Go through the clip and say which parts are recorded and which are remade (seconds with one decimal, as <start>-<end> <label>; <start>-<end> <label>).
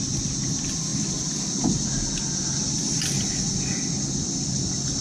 0.0-5.0 recorded